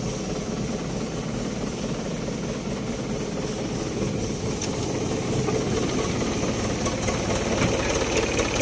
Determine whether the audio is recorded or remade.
recorded